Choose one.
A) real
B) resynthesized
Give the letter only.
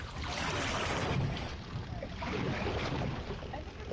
B